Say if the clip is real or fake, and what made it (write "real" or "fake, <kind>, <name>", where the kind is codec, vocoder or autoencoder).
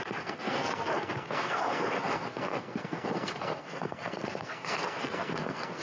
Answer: fake, codec, SNAC